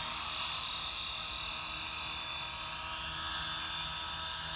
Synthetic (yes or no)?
no